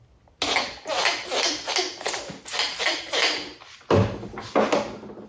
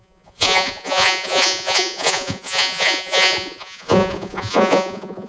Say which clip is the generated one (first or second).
second